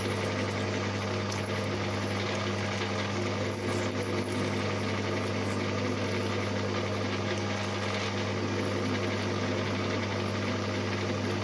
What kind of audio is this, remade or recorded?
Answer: recorded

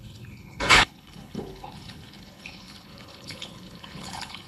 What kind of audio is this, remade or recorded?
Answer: remade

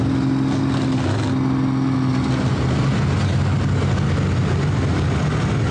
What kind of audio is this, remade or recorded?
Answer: recorded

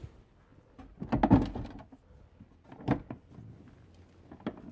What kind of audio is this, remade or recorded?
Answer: recorded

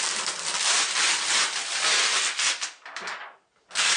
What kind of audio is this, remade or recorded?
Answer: recorded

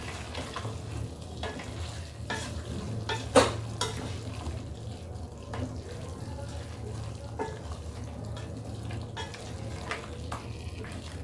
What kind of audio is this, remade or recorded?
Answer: recorded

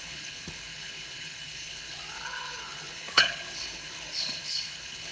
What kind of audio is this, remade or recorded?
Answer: remade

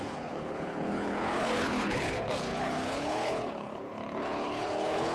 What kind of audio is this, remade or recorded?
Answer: remade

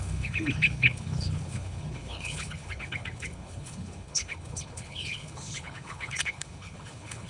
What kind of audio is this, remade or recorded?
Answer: remade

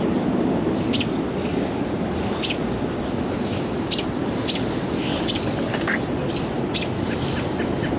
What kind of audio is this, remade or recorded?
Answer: recorded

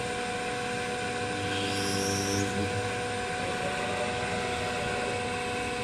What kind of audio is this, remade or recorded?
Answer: recorded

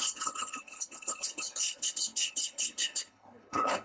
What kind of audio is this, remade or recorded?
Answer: remade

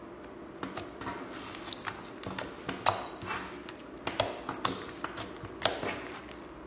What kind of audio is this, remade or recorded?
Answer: recorded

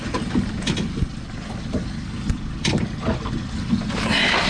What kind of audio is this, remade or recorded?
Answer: recorded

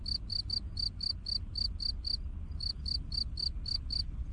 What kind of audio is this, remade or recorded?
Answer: recorded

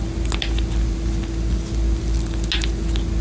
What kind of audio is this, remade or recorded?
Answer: recorded